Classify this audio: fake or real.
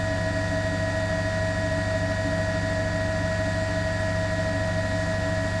real